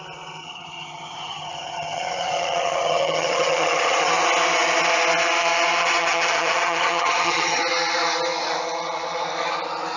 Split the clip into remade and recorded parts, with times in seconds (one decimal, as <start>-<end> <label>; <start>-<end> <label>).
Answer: 0.0-0.4 recorded; 0.4-4.0 remade; 4.0-5.8 recorded; 5.8-7.6 remade; 7.6-10.0 recorded